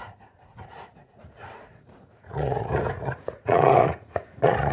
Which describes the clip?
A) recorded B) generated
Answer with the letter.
B